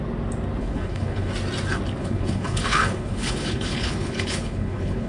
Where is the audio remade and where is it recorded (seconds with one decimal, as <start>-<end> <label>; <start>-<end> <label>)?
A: 0.0-0.6 recorded; 0.6-1.3 remade; 1.3-2.0 recorded; 2.0-5.1 remade